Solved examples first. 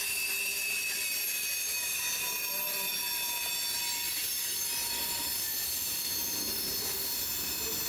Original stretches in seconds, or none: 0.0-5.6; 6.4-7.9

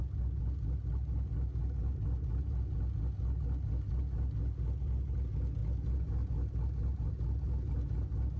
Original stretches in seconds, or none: 0.0-8.4

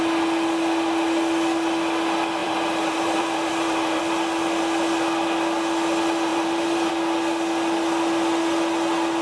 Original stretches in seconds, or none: 0.0-2.4; 4.0-6.3; 6.9-9.2

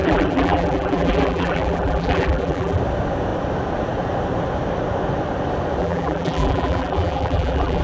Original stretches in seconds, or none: 2.8-5.8

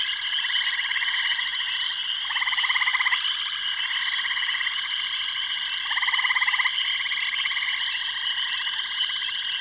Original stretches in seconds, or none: 0.0-9.6

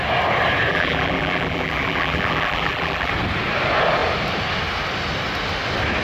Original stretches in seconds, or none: 0.0-0.7; 3.1-6.0

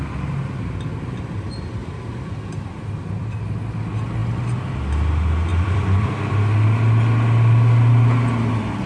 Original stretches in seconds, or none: 0.0-1.8; 2.7-4.2; 4.8-5.5; 6.3-8.9

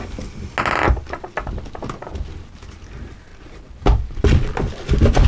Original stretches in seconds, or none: 0.0-3.3; 4.2-5.3